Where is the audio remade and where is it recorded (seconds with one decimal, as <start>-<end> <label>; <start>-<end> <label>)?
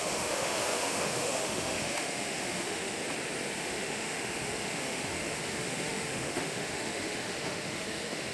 0.0-3.0 remade; 3.0-3.6 recorded; 3.6-8.3 remade